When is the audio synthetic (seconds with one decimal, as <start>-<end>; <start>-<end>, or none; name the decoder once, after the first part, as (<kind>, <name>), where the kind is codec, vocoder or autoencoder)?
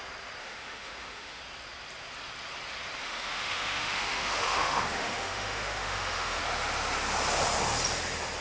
0.4-1.4 (autoencoder, DAC-VAE); 3.0-6.4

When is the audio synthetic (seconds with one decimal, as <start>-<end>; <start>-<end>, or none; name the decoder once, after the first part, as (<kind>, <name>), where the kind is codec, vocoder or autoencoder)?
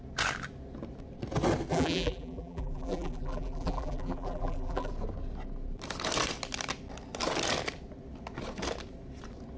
1.7-4.9 (vocoder, BigVGAN v2)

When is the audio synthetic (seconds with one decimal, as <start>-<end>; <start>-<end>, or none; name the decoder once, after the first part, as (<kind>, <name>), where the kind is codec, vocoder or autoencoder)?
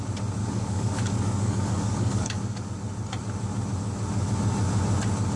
0.4-2.7 (codec, DAC)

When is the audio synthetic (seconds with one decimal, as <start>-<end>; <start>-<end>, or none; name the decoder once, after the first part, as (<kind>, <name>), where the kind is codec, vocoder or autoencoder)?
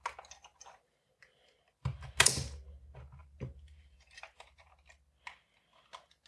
3.2-4.7 (vocoder, BigVGAN v2)